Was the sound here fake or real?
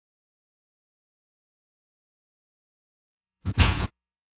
fake